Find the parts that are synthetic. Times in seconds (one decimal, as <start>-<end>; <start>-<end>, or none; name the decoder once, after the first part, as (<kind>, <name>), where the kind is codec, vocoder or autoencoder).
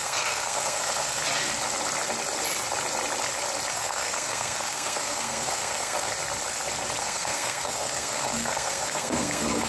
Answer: 0.0-1.2 (codec, SNAC); 3.7-6.1; 7.0-9.7